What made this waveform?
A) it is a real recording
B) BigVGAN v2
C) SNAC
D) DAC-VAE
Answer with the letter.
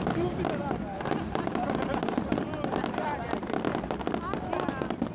A